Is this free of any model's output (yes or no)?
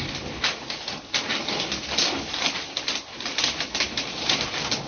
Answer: yes